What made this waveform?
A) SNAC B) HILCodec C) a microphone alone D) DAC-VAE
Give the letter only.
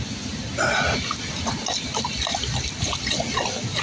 C